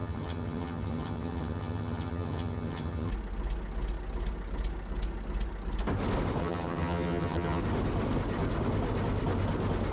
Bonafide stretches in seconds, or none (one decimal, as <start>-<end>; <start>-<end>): 3.1-6.4; 7.6-9.9